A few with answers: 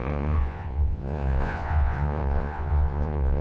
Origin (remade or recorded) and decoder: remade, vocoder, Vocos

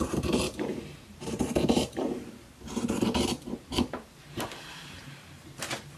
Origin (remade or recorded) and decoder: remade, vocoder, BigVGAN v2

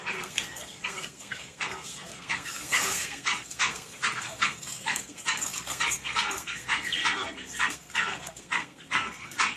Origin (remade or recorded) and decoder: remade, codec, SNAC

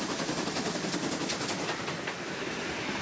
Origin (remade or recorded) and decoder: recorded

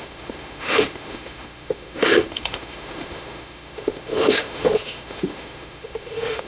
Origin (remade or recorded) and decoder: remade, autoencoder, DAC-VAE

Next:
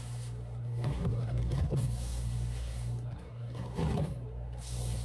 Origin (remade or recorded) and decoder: remade, codec, SNAC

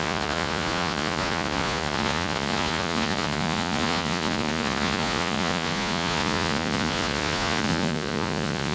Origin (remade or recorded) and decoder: remade, vocoder, Vocos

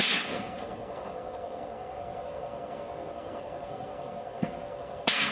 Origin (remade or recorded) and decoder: remade, codec, SNAC